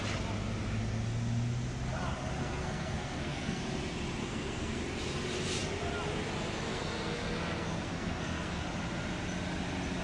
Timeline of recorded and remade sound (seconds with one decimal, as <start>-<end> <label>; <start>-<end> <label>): 0.0-2.4 recorded; 2.4-3.6 remade; 3.6-4.2 recorded; 4.2-4.8 remade; 4.8-6.7 recorded; 6.7-8.6 remade; 8.6-10.0 recorded